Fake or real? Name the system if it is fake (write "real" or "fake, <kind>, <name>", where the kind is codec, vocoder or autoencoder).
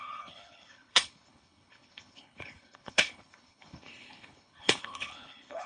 fake, codec, HILCodec